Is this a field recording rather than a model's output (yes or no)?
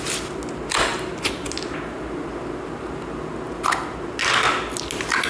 yes